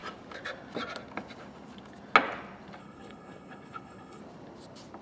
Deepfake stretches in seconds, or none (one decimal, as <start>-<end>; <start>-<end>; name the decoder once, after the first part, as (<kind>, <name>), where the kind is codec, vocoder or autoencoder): 2.8-4.2 (codec, HILCodec)